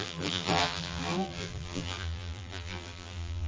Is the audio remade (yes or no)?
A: yes